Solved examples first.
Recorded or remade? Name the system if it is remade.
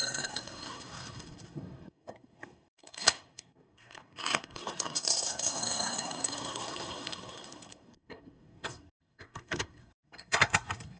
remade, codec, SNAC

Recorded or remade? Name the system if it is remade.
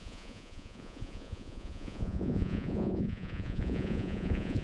remade, vocoder, Vocos